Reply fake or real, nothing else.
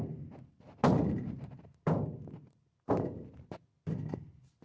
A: real